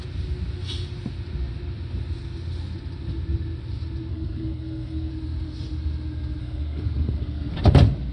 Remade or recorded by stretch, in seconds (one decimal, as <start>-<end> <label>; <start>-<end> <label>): 0.0-4.1 recorded; 4.1-5.1 remade; 5.1-6.4 recorded; 6.4-7.6 remade; 7.6-8.1 recorded